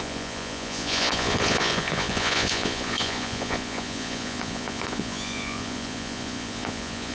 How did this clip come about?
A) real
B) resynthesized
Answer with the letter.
B